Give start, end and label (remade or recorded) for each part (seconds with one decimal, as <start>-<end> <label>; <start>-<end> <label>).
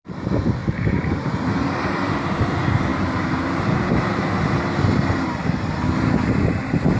0.0-0.6 recorded; 0.6-2.4 remade; 2.4-2.9 recorded; 2.9-4.6 remade; 4.6-7.0 recorded